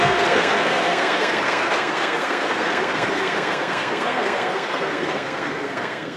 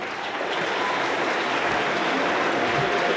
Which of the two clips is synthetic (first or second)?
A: first